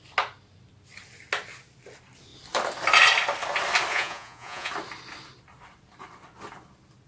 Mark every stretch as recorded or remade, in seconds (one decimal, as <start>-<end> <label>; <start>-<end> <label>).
0.0-3.9 recorded; 3.9-4.7 remade; 4.7-7.1 recorded